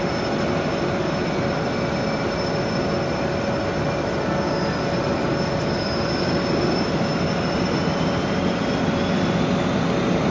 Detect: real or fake real